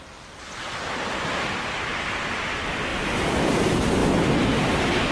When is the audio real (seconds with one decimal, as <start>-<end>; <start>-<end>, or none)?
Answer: 0.0-5.1